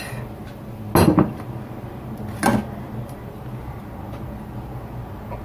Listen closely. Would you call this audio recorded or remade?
recorded